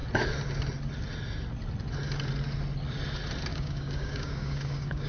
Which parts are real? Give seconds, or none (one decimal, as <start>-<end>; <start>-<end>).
0.0-3.5